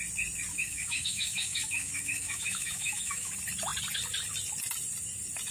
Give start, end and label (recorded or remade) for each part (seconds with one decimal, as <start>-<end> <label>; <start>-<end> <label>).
0.0-0.5 recorded; 0.5-3.3 remade; 3.3-5.5 recorded